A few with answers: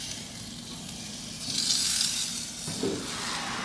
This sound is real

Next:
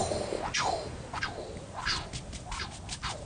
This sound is real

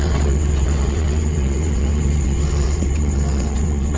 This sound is fake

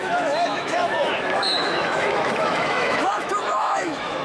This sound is fake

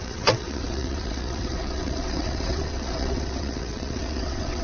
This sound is fake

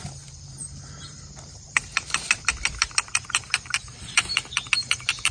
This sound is fake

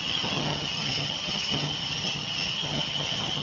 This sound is fake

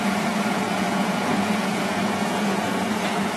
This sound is fake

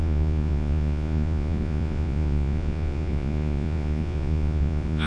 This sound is fake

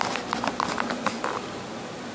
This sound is real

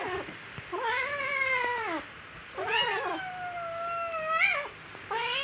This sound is real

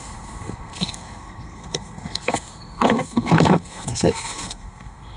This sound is fake